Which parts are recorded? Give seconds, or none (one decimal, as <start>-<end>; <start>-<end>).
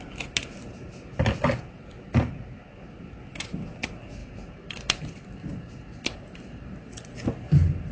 0.0-4.2; 6.9-7.9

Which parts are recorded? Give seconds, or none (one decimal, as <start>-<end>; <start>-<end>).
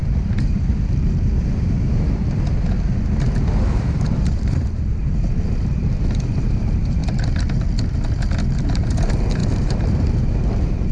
0.7-3.7; 7.0-8.6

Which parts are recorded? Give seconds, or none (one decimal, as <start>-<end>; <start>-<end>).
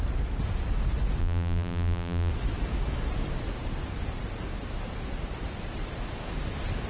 0.0-1.2; 2.3-6.9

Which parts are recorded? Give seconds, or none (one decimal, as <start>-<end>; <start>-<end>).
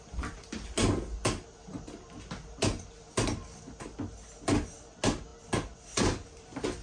0.0-6.8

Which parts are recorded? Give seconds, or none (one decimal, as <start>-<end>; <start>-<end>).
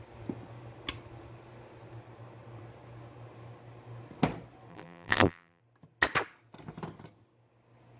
0.0-4.7; 5.6-8.0